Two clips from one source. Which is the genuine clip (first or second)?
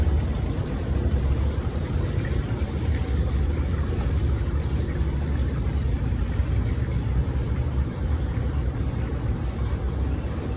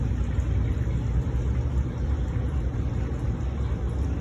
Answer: second